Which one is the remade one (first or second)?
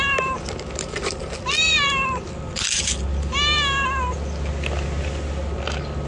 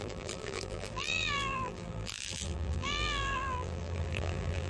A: second